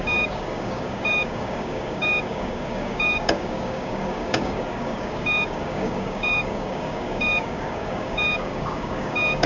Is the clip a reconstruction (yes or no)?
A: yes